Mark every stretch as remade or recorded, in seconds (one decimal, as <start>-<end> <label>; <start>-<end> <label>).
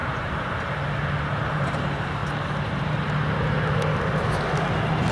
0.0-1.5 recorded; 1.5-2.2 remade; 2.2-5.1 recorded